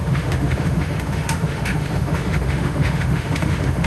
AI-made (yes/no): yes